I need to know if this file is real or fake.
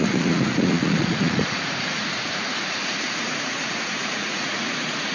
fake